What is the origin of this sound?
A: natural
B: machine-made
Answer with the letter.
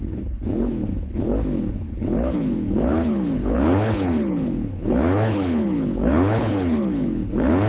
B